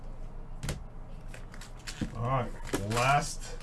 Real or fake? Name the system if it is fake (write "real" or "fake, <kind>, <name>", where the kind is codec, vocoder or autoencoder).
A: real